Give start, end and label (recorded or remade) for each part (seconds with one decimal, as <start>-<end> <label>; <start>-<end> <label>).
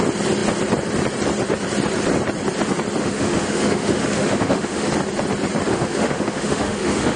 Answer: 0.0-3.0 recorded; 3.0-4.9 remade; 4.9-5.7 recorded; 5.7-7.2 remade